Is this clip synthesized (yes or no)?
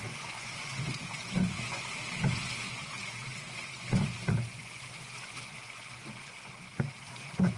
yes